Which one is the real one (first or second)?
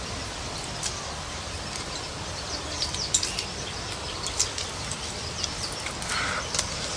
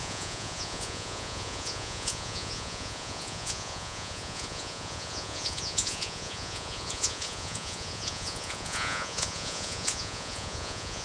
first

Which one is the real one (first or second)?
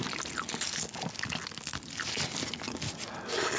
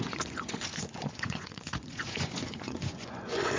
first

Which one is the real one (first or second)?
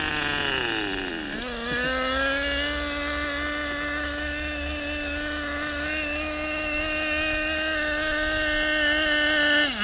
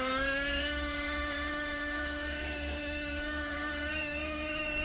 first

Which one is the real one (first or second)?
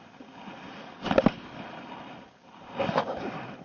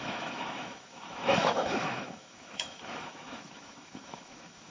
first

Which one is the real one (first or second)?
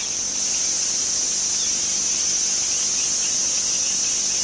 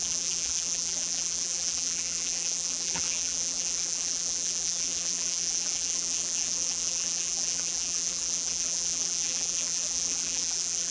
first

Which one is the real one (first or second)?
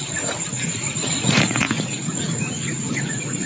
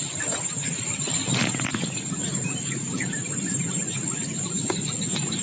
second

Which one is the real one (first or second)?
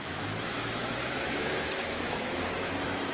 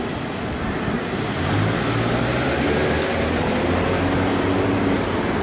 second